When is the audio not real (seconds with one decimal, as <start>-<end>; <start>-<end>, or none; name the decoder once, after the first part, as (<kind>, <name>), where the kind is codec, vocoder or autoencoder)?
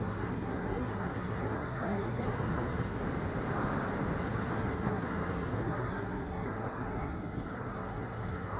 0.0-3.0 (codec, SNAC); 4.2-8.6